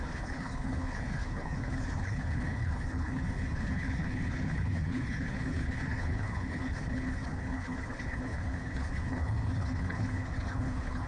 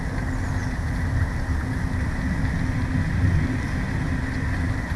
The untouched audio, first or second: second